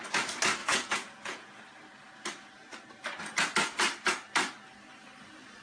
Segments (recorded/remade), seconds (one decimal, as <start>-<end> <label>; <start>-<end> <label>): 0.0-0.6 recorded; 0.6-1.6 remade; 1.6-5.6 recorded